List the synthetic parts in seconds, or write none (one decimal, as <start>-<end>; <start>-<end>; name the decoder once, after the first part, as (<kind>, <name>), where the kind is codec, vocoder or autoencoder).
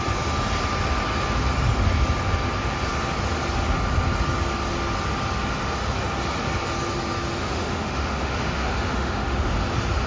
7.4-9.5 (autoencoder, DAC-VAE)